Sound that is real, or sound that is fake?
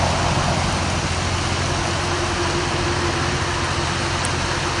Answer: real